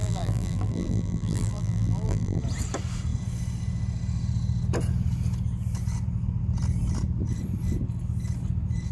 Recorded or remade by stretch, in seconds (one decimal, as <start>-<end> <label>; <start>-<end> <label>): 0.0-2.4 remade; 2.4-8.9 recorded